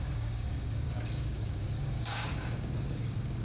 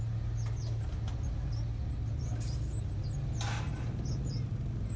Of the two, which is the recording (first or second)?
second